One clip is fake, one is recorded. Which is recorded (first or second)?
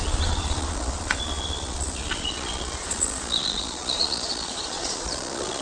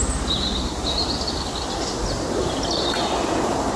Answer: second